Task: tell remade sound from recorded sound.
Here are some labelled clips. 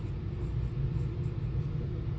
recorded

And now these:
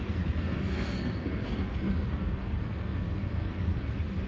remade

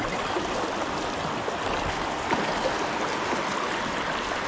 recorded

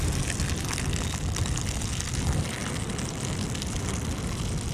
recorded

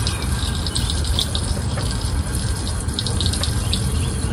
recorded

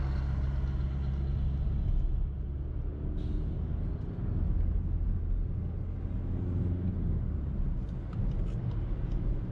recorded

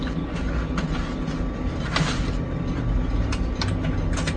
recorded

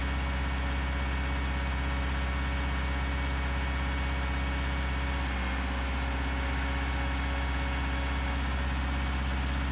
recorded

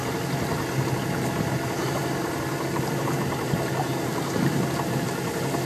recorded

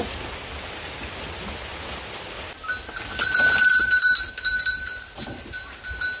recorded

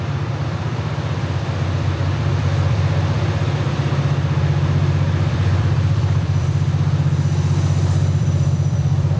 remade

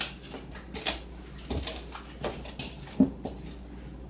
recorded